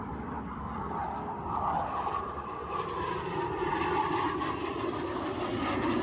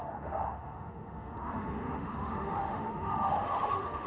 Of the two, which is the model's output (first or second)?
second